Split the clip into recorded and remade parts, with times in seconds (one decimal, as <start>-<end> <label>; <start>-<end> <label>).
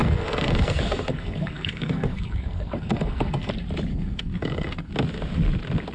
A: 0.0-3.5 remade; 3.5-3.9 recorded; 3.9-4.9 remade; 4.9-5.9 recorded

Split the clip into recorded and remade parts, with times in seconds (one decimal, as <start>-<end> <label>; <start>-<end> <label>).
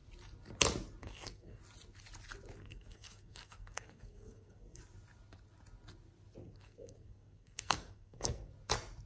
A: 0.0-1.0 recorded; 1.0-1.6 remade; 1.6-2.6 recorded; 2.6-4.8 remade; 4.8-6.4 recorded; 6.4-8.5 remade; 8.5-9.1 recorded